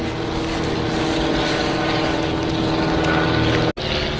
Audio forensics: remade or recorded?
recorded